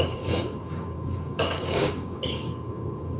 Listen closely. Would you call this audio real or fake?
fake